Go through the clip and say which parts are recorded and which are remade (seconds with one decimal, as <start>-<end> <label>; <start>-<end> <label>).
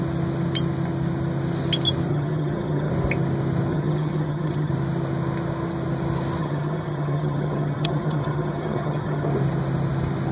0.0-2.1 recorded; 2.1-2.9 remade; 2.9-3.7 recorded; 3.7-4.7 remade; 4.7-6.4 recorded; 6.4-9.3 remade; 9.3-10.3 recorded